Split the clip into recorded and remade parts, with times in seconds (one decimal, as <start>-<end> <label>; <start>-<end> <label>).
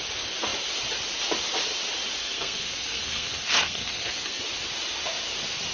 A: 0.0-2.2 recorded; 2.2-4.4 remade; 4.4-5.7 recorded